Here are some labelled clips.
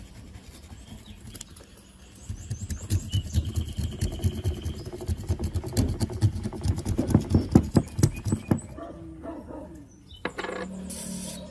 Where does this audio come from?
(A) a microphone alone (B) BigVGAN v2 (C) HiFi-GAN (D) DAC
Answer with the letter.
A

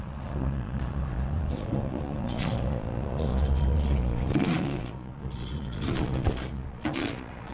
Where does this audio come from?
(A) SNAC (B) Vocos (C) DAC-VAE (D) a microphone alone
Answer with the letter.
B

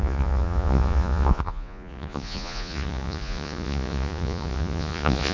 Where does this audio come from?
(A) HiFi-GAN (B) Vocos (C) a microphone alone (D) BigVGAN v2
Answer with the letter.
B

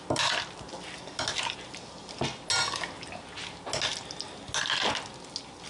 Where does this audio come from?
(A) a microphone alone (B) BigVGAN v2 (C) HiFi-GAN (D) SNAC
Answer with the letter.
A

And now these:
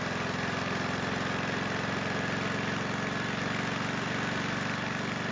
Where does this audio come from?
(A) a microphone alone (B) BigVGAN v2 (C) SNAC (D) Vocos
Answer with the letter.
A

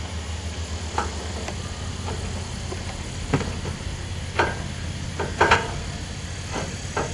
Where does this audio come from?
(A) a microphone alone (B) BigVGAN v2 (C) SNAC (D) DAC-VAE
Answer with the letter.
A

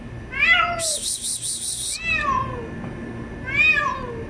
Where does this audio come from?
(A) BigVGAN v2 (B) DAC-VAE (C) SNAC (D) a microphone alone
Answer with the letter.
D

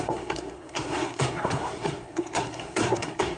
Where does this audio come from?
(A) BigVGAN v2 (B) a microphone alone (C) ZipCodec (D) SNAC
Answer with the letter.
D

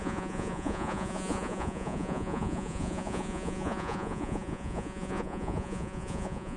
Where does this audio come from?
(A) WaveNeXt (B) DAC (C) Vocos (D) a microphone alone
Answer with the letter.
C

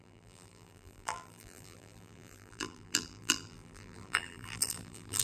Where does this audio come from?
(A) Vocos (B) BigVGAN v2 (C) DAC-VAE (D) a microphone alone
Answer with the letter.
B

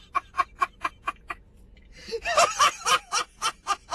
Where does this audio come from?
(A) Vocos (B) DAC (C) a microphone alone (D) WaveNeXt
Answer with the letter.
C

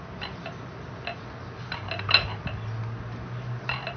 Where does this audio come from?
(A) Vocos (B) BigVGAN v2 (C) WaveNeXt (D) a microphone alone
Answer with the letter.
D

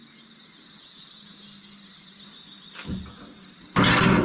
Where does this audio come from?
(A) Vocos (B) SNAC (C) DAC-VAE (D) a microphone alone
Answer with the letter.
D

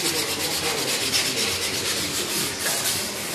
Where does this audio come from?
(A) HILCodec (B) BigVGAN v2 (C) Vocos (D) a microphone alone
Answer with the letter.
D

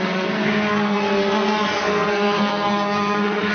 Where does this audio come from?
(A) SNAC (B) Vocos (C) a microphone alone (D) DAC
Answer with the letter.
A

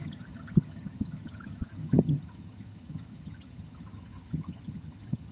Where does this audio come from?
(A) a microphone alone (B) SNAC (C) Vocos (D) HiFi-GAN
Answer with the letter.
D